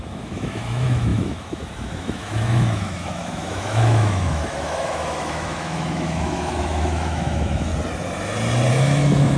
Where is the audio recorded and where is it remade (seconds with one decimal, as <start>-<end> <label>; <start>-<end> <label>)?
0.0-7.7 remade; 7.7-8.7 recorded; 8.7-9.4 remade